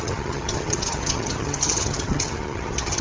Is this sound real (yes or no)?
no